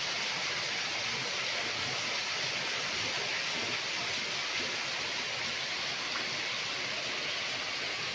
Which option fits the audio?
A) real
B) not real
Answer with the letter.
A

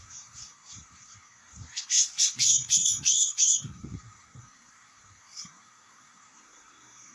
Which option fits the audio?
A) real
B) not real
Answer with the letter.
B